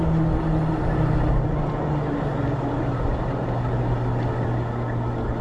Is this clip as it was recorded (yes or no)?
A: yes